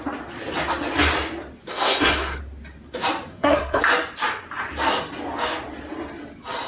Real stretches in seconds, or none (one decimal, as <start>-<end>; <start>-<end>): 0.0-1.7; 2.4-3.3; 3.8-6.7